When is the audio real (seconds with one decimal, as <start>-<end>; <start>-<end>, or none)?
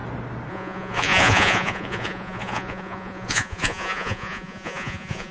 0.0-0.5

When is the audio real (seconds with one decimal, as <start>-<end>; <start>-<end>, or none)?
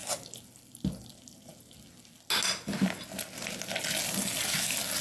0.0-5.0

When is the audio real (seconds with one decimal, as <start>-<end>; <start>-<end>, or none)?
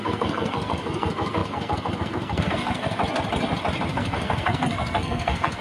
3.0-3.9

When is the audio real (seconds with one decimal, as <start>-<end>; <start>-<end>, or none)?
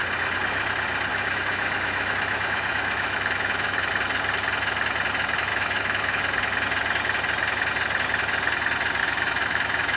0.0-1.1; 3.9-5.5; 6.2-9.0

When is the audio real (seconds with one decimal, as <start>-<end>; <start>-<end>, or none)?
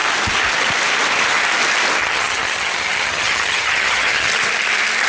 0.0-2.0; 4.3-5.1